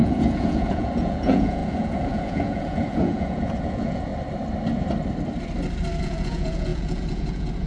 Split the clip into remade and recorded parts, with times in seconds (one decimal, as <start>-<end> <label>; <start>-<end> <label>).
0.0-4.1 remade; 4.1-6.0 recorded; 6.0-7.7 remade